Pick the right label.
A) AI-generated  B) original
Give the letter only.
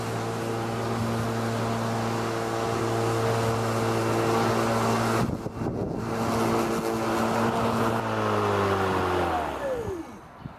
B